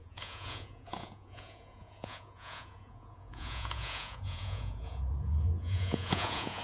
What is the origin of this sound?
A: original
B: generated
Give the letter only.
B